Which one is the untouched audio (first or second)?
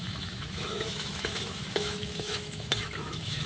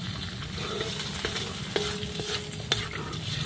second